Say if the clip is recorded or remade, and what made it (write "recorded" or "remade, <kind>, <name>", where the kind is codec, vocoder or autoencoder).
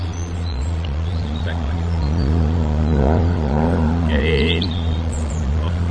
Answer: remade, vocoder, Vocos